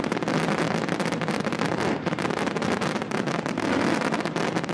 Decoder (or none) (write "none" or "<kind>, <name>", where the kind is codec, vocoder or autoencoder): none